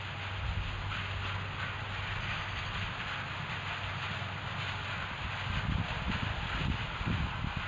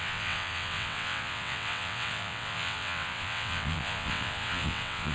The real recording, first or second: first